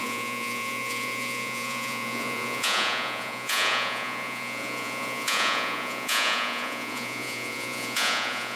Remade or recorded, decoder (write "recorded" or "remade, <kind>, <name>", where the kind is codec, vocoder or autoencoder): remade, vocoder, Vocos